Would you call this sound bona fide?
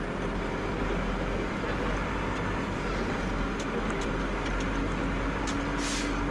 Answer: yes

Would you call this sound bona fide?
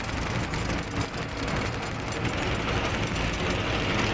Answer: yes